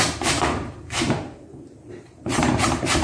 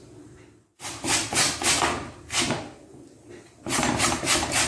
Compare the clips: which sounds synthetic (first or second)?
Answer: first